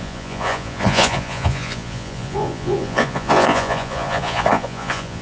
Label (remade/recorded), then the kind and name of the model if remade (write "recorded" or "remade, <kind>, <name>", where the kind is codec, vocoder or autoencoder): remade, vocoder, Vocos